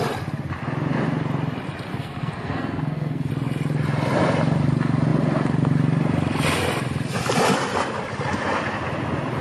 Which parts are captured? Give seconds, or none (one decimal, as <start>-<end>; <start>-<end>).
0.0-1.9; 3.3-9.4